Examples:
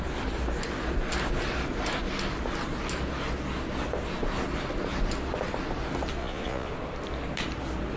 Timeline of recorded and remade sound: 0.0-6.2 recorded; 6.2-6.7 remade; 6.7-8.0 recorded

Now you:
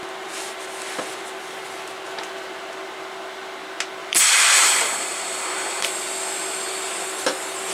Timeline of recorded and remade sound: 0.0-4.0 recorded; 4.0-5.9 remade; 5.9-7.7 recorded